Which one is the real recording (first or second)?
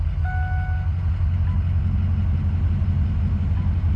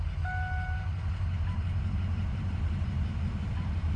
first